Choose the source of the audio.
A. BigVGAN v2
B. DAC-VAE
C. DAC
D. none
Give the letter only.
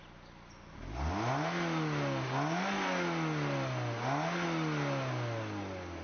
D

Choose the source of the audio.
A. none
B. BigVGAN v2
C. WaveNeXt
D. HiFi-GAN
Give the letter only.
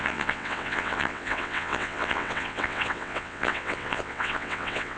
C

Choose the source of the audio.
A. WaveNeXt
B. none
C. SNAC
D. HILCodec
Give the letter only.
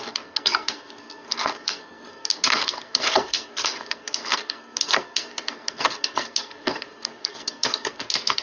C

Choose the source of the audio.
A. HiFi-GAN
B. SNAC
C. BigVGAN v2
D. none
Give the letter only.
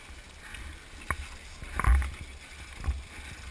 D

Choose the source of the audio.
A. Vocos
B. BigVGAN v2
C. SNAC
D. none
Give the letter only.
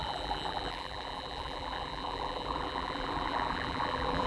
B